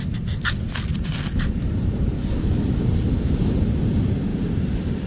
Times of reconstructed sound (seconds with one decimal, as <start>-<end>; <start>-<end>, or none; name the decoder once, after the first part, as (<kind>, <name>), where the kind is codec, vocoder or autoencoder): 0.9-3.7 (vocoder, BigVGAN v2); 4.3-5.1